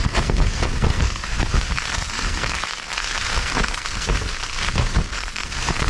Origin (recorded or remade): remade